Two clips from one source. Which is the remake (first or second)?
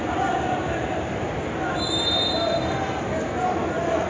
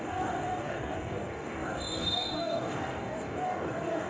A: second